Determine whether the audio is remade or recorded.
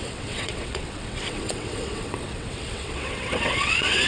remade